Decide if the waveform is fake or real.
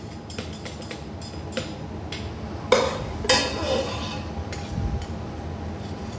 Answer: real